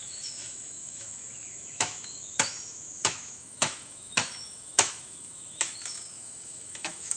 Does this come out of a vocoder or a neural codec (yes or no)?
yes